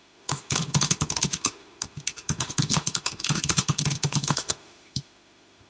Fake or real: fake